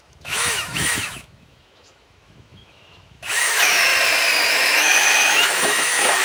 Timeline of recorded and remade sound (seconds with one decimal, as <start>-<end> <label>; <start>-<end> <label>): 0.0-3.9 remade; 3.9-4.5 recorded; 4.5-6.2 remade